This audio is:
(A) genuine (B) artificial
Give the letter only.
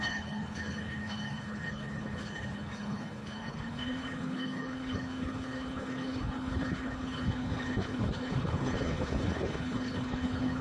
B